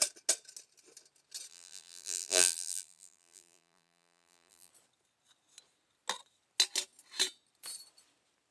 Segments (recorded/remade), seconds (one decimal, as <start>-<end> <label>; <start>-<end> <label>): 0.0-1.5 recorded; 1.5-4.7 remade; 4.7-8.5 recorded